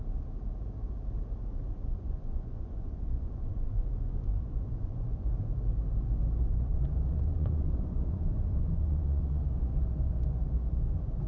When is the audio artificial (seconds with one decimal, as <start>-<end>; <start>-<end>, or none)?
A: 1.8-5.3; 6.4-10.8